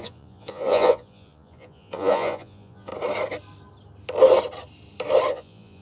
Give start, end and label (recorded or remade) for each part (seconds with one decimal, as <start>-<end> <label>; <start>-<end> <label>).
0.0-2.9 remade; 2.9-5.3 recorded; 5.3-5.8 remade